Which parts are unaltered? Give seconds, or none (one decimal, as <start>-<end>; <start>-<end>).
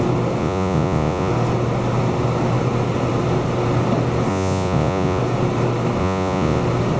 0.0-0.4; 1.3-4.3; 5.2-6.0; 6.6-7.0